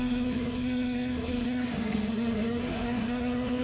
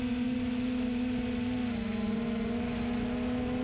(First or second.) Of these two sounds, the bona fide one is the second